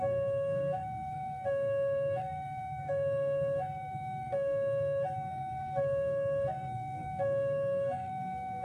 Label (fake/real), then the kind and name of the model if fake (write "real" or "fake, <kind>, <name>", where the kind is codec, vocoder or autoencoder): fake, codec, SNAC